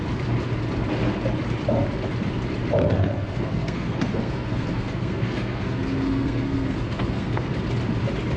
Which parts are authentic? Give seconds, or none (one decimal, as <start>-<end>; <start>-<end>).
0.0-2.8; 7.5-8.4